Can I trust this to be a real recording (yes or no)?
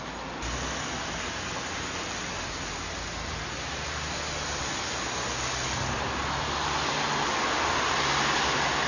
yes